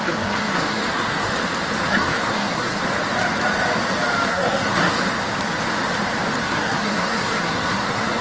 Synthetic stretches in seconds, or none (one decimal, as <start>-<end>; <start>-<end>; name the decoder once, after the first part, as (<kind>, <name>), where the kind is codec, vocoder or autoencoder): 0.0-1.3 (codec, SNAC); 1.9-2.8; 4.3-5.0; 6.4-8.2